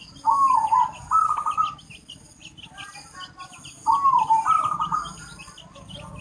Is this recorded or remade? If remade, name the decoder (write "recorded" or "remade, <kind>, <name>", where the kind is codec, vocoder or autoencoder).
recorded